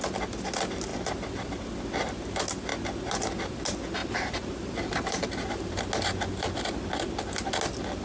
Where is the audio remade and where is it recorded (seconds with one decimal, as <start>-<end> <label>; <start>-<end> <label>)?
0.0-4.0 recorded; 4.0-5.8 remade; 5.8-8.0 recorded

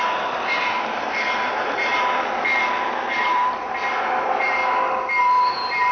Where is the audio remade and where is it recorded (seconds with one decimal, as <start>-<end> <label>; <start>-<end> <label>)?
0.0-1.9 remade; 1.9-3.1 recorded; 3.1-4.6 remade; 4.6-5.2 recorded; 5.2-5.9 remade

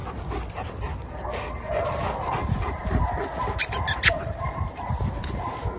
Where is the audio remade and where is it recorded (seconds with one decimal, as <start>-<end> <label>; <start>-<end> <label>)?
0.0-1.0 recorded; 1.0-1.7 remade; 1.7-2.4 recorded; 2.4-3.0 remade; 3.0-4.1 recorded; 4.1-5.0 remade; 5.0-5.8 recorded